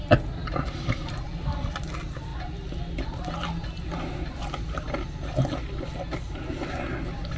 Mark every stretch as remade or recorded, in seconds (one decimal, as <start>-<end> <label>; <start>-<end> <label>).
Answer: 0.0-0.4 recorded; 0.4-1.9 remade; 1.9-7.4 recorded